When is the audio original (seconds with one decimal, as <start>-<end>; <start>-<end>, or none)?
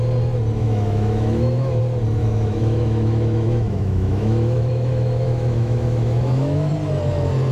0.0-0.6; 1.8-2.2; 6.7-7.5